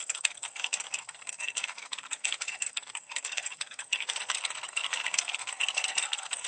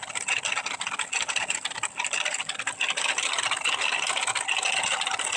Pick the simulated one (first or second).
first